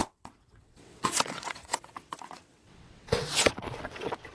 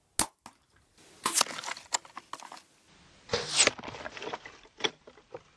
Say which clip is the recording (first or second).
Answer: second